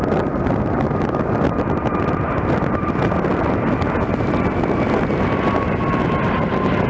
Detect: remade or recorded recorded